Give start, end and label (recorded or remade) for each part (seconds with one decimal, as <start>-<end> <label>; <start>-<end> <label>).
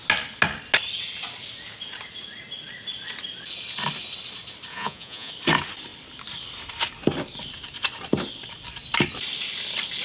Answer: 0.0-4.7 recorded; 4.7-5.3 remade; 5.3-10.0 recorded